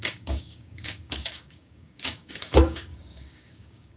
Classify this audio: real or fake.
fake